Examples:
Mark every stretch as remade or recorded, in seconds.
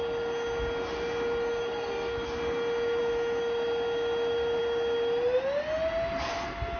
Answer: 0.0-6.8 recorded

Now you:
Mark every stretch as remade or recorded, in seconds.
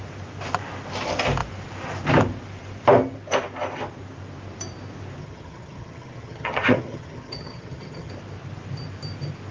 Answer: 0.0-5.2 recorded; 5.2-8.1 remade; 8.1-9.5 recorded